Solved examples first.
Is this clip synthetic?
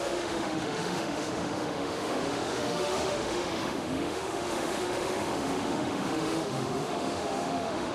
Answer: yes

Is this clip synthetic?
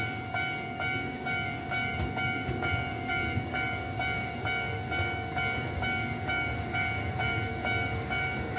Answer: yes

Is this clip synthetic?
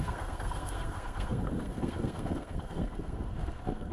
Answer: yes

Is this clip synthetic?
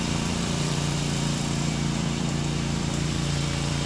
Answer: yes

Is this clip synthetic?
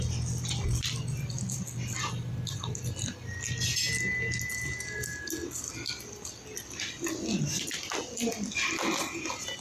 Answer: no